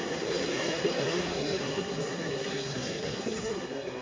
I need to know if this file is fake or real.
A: fake